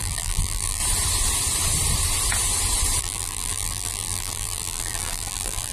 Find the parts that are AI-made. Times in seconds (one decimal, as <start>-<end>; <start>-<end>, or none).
0.0-0.8; 3.0-5.7